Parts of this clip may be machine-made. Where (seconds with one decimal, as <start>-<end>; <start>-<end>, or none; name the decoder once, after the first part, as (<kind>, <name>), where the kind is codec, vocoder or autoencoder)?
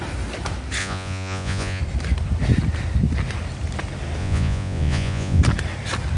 0.8-1.8 (vocoder, Vocos); 4.2-5.4